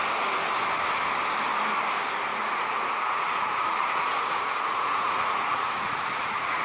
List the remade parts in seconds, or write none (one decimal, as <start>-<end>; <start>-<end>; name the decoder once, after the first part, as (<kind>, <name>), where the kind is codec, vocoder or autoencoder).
2.3-6.6 (vocoder, Vocos)